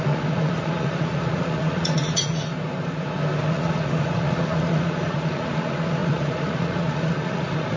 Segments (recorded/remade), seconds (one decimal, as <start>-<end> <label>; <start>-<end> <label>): 0.0-2.5 remade; 2.5-3.5 recorded; 3.5-7.8 remade